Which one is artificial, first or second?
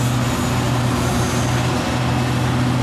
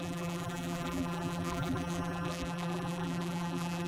second